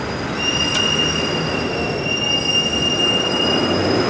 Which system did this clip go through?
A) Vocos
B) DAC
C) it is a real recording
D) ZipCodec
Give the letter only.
C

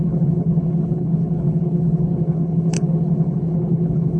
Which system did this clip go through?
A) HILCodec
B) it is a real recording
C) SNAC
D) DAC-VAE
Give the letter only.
A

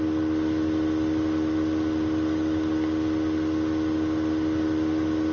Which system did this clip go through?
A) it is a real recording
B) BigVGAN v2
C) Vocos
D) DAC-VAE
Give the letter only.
A